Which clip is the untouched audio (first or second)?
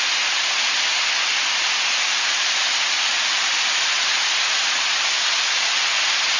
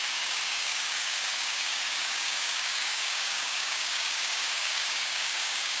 first